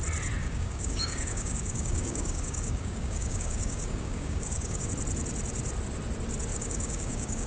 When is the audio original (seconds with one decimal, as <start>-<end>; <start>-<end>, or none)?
0.0-0.4; 4.9-6.5